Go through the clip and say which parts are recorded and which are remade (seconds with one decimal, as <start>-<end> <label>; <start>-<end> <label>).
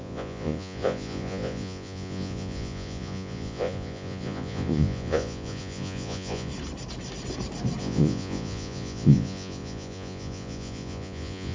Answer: 0.0-6.5 remade; 6.5-7.8 recorded; 7.8-11.5 remade